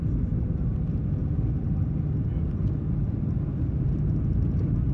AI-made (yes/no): no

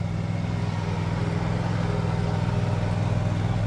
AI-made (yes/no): no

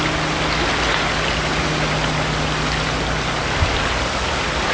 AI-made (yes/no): no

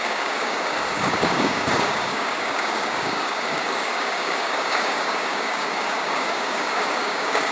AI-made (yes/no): yes